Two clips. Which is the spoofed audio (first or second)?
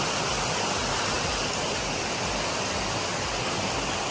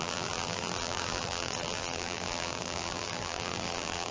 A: second